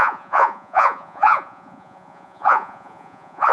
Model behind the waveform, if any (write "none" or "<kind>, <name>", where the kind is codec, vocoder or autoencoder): vocoder, Vocos